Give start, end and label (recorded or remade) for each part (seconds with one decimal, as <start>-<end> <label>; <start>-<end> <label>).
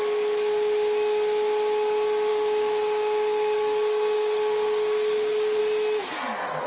0.0-2.3 recorded; 2.3-5.6 remade; 5.6-6.7 recorded